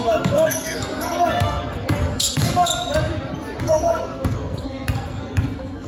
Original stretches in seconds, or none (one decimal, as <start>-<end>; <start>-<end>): 2.7-3.6